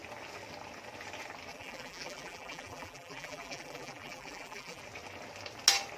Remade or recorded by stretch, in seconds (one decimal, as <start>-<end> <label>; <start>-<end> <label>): 0.0-1.5 recorded; 1.5-4.8 remade; 4.8-6.0 recorded